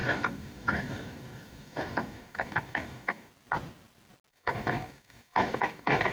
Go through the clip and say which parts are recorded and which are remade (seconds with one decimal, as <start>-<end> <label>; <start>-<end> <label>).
0.0-3.3 remade; 3.3-4.3 recorded; 4.3-6.1 remade